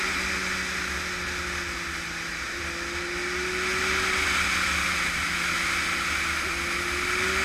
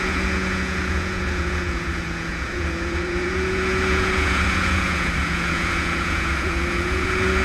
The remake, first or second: second